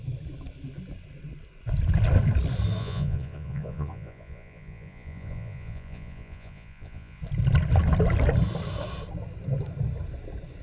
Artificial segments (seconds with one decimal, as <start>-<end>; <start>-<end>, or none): 2.8-7.2